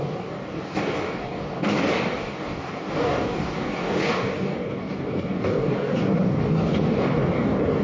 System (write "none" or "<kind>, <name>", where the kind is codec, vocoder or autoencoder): codec, DAC